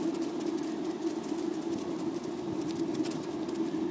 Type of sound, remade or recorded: recorded